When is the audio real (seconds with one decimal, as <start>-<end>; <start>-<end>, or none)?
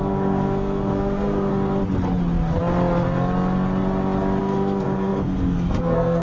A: 1.5-4.4